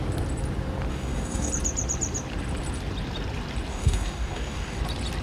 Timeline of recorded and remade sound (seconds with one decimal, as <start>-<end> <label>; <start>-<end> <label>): 0.0-0.9 recorded; 0.9-1.5 remade; 1.5-3.7 recorded; 3.7-4.8 remade; 4.8-5.2 recorded